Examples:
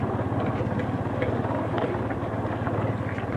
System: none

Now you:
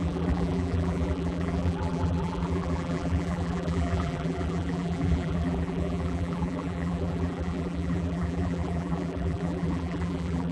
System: vocoder, BigVGAN v2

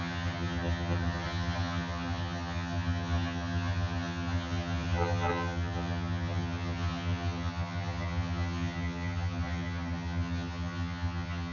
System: vocoder, HiFi-GAN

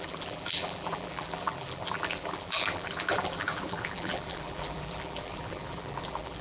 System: vocoder, BigVGAN v2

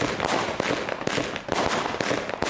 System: none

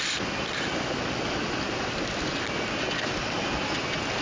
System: none